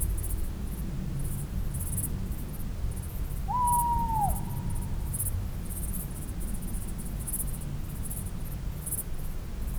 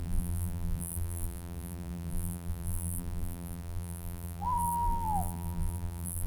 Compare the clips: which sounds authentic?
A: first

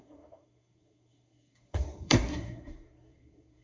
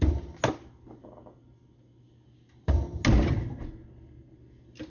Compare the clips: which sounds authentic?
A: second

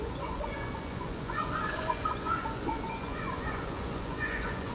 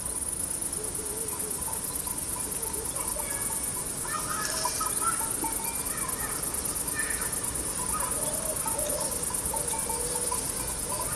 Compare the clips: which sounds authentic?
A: second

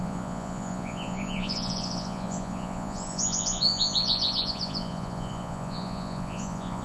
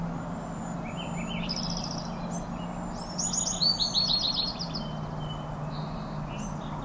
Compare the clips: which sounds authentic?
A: second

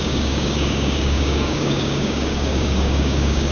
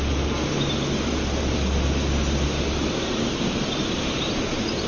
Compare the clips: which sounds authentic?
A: second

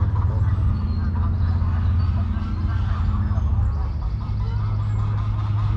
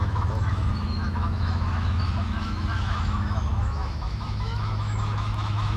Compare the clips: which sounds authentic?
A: first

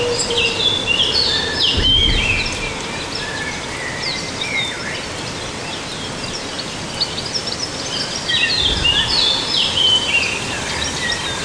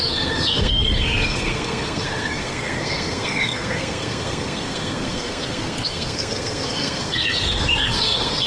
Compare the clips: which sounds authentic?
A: first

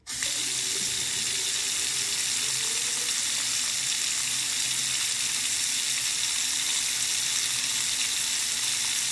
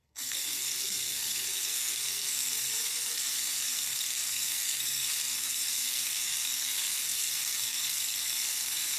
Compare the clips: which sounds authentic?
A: first